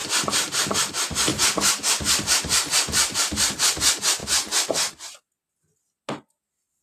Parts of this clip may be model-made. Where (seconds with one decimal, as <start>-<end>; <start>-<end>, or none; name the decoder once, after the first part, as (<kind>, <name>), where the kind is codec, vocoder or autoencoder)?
0.0-0.8 (vocoder, BigVGAN v2); 1.3-3.8